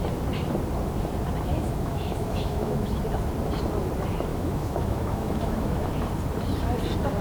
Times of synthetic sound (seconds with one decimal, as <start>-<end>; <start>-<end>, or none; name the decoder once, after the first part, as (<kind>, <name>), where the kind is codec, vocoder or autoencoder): 1.5-3.0 (autoencoder, DAC-VAE); 4.3-5.9